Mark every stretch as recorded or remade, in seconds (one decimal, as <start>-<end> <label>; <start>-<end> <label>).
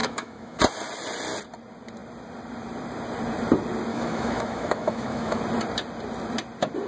0.0-0.6 remade; 0.6-3.9 recorded; 3.9-5.4 remade; 5.4-6.9 recorded